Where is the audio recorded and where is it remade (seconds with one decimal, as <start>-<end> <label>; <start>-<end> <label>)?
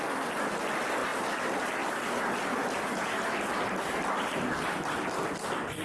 0.0-5.8 recorded